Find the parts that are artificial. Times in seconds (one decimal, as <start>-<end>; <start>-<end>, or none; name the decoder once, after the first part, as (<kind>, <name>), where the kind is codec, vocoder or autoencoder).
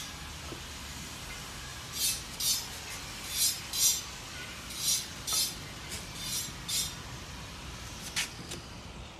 none